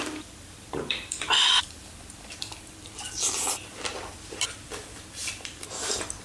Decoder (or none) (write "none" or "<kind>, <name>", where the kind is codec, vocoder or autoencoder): vocoder, BigVGAN v2